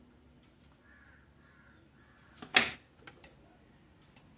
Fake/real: real